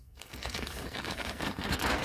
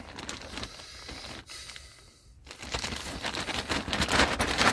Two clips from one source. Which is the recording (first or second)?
second